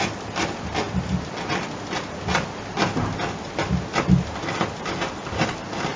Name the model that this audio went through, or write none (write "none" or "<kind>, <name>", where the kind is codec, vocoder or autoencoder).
none